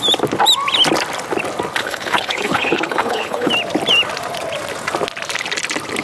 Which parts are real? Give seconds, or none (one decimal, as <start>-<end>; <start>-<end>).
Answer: 0.0-1.8; 3.5-6.0